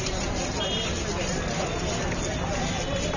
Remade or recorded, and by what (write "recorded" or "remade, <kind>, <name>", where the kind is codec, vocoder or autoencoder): recorded